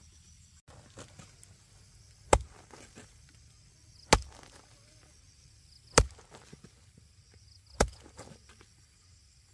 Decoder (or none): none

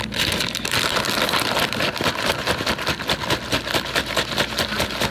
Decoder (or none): none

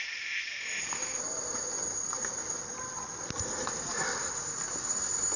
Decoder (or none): vocoder, BigVGAN v2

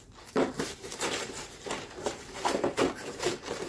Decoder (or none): vocoder, BigVGAN v2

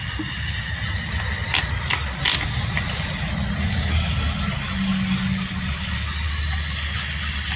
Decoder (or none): none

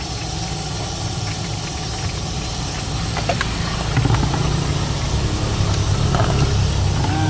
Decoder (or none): none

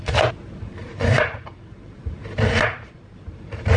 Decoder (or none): vocoder, BigVGAN v2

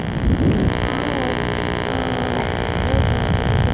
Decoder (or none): none